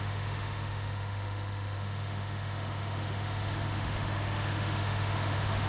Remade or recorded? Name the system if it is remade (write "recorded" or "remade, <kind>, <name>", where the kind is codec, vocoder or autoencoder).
remade, autoencoder, DAC-VAE